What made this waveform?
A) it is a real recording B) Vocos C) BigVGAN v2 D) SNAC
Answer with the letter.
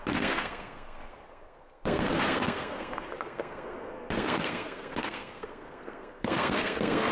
D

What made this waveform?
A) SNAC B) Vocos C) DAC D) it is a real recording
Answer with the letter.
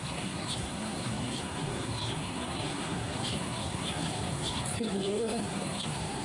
A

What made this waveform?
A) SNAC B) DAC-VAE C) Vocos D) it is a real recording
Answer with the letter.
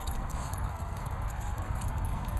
A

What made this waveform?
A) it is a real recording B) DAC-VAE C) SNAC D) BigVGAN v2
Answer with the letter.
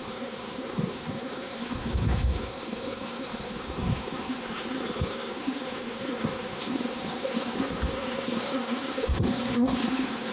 C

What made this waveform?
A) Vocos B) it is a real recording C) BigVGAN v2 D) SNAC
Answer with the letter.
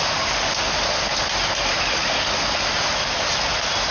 B